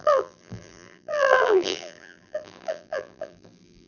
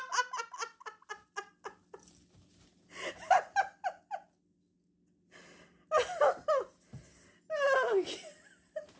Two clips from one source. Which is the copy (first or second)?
first